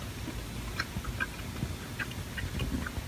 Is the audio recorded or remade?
recorded